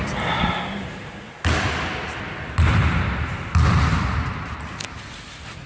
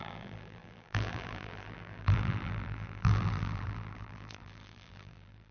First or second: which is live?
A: first